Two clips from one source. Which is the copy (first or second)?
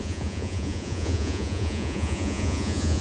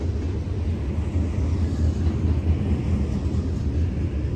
first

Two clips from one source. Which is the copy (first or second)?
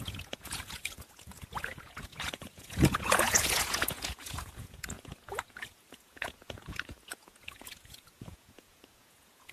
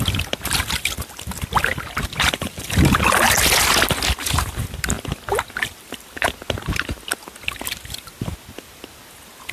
first